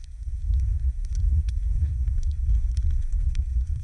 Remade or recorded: remade